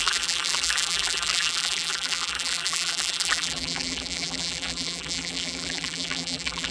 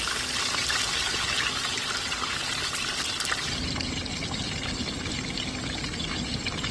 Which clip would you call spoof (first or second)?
first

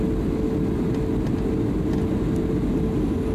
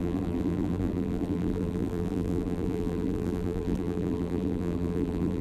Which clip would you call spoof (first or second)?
second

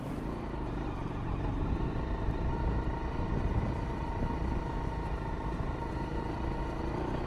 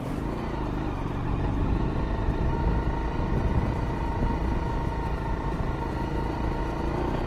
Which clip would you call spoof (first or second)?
first